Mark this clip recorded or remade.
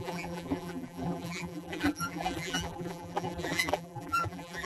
remade